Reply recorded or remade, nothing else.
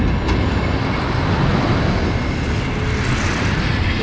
recorded